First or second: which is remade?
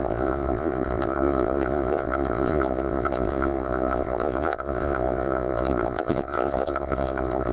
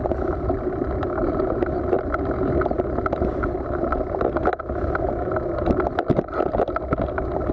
first